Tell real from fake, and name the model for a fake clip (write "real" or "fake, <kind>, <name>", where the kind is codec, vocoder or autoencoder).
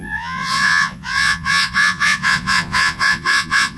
fake, vocoder, Vocos